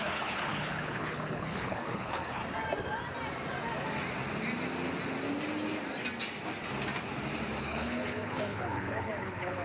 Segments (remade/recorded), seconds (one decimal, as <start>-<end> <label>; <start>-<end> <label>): 0.0-2.4 remade; 2.4-7.6 recorded; 7.6-9.6 remade